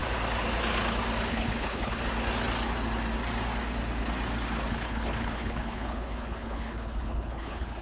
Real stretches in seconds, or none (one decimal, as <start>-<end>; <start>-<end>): 0.0-1.3; 2.0-4.7